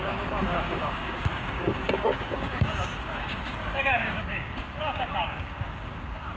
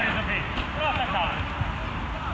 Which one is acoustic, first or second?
second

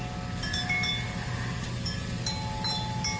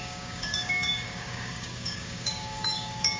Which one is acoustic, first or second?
first